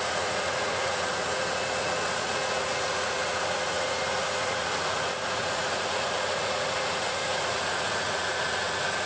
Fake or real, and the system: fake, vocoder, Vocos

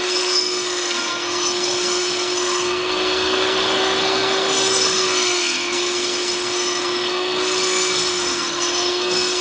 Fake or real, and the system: fake, codec, SNAC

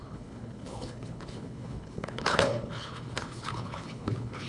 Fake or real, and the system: fake, codec, HILCodec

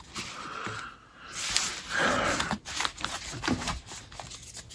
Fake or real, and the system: real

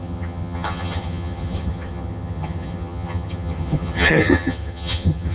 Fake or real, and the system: fake, vocoder, HiFi-GAN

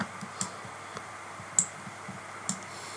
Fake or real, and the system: real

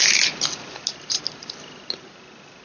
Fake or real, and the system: real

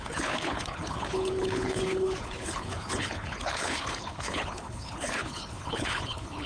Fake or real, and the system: fake, codec, HILCodec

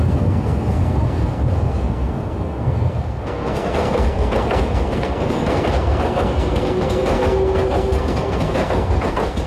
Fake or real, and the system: fake, codec, SNAC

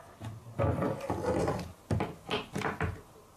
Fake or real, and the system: real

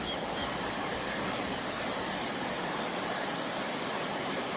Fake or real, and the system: real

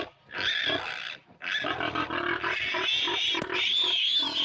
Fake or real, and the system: real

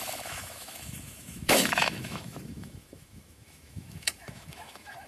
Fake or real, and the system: fake, autoencoder, DAC-VAE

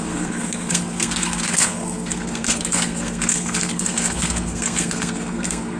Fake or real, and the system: fake, codec, SNAC